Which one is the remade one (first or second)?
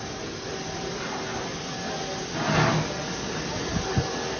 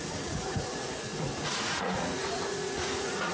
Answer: second